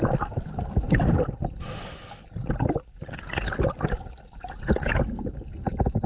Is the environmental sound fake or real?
real